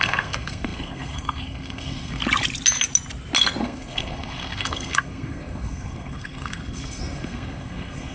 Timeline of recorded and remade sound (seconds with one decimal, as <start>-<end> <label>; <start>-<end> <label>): 0.0-2.2 remade; 2.2-3.6 recorded; 3.6-8.1 remade

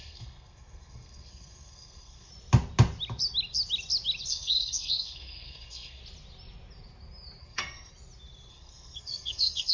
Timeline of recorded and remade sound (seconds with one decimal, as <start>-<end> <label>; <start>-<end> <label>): 0.0-2.3 remade; 2.3-4.3 recorded; 4.3-6.0 remade; 6.0-7.4 recorded; 7.4-7.9 remade; 7.9-8.5 recorded; 8.5-9.7 remade

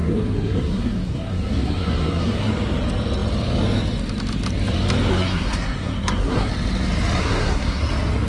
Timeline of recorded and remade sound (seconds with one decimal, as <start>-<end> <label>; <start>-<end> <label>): 0.0-2.5 remade; 2.5-5.1 recorded; 5.1-6.5 remade; 6.5-7.2 recorded; 7.2-7.9 remade; 7.9-8.3 recorded

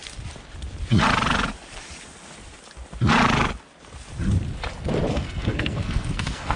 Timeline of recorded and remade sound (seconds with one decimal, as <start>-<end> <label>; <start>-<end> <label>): 0.0-5.1 recorded; 5.1-6.6 remade

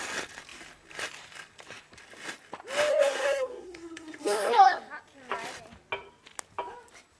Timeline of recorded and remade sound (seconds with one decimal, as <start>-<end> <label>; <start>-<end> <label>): 0.0-2.9 recorded; 2.9-4.8 remade; 4.8-7.2 recorded

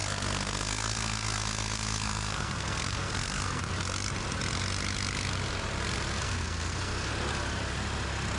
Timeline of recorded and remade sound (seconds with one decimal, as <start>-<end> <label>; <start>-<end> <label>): 0.0-3.6 remade; 3.6-6.2 recorded; 6.2-7.1 remade; 7.1-8.4 recorded